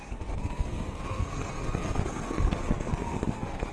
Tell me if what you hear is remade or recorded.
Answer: remade